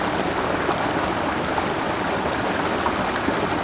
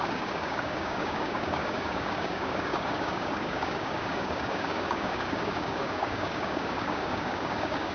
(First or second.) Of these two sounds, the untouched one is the first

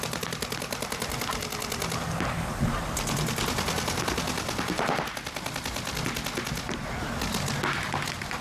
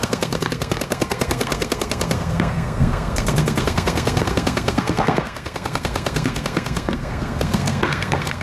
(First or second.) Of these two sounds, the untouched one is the first